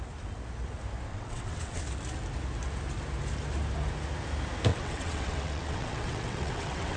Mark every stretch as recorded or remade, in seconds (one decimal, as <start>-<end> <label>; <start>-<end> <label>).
0.0-1.1 recorded; 1.1-1.8 remade; 1.8-4.7 recorded; 4.7-7.0 remade